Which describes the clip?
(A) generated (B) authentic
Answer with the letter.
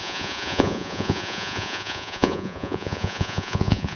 A